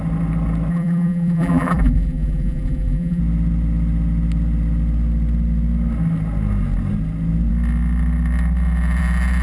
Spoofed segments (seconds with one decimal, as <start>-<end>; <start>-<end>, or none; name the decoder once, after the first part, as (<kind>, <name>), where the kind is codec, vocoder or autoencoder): 0.7-3.2 (vocoder, BigVGAN v2)